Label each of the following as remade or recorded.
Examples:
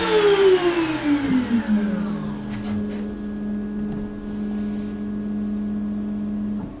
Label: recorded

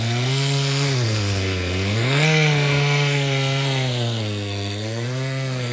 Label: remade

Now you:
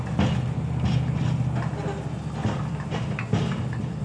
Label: recorded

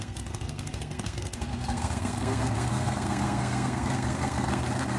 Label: remade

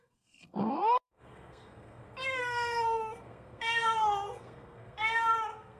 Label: remade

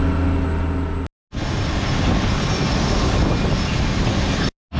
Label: recorded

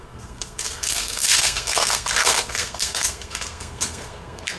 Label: remade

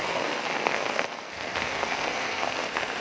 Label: remade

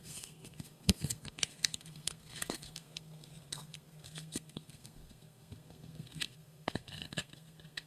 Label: remade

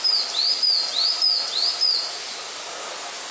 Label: recorded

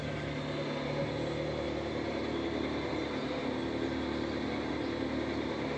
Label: recorded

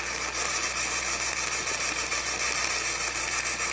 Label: recorded